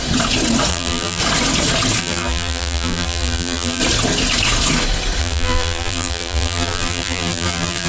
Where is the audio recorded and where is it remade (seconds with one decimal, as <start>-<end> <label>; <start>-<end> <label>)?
0.0-0.7 recorded; 0.7-1.2 remade; 1.2-2.0 recorded; 2.0-3.8 remade; 3.8-5.2 recorded; 5.2-7.9 remade